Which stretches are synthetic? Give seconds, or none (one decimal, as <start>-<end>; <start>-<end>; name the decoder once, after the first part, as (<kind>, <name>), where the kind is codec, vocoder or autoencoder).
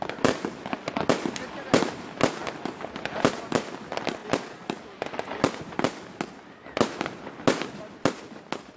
none